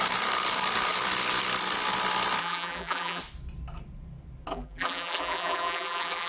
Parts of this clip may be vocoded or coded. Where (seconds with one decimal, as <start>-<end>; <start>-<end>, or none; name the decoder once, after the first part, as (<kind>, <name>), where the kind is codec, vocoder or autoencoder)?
2.4-3.2 (vocoder, BigVGAN v2); 4.5-6.3